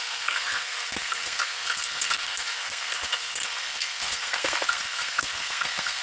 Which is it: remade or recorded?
remade